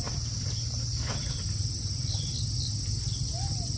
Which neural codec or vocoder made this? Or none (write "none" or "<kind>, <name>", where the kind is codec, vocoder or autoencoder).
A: none